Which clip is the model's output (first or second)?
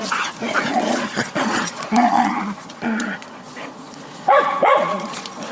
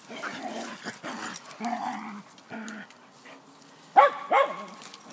first